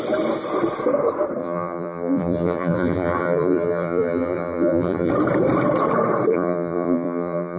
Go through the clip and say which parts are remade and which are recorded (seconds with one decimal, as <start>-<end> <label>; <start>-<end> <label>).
0.0-1.4 recorded; 1.4-5.1 remade; 5.1-6.3 recorded; 6.3-7.6 remade